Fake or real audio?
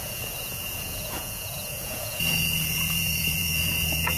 fake